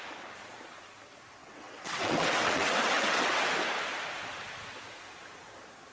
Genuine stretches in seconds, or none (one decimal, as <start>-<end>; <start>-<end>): 0.0-1.4; 3.5-5.9